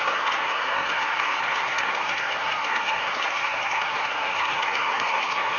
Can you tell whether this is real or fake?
fake